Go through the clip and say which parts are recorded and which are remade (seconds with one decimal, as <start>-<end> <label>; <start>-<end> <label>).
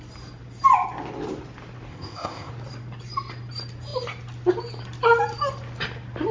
0.0-1.9 recorded; 1.9-2.5 remade; 2.5-6.3 recorded